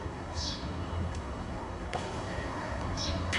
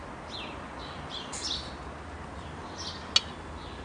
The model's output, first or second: first